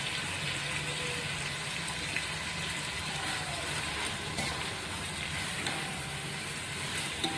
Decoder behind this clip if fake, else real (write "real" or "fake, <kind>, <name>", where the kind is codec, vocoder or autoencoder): real